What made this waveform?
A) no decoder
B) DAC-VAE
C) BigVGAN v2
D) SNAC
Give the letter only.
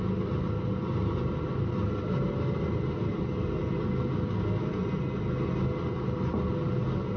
A